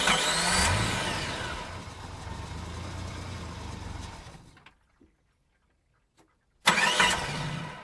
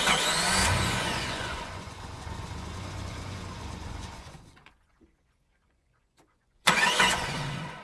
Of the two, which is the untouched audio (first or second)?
first